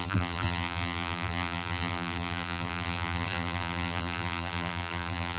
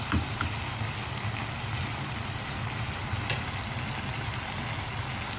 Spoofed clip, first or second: first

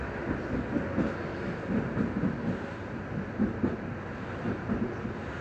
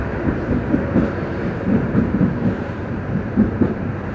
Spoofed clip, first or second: second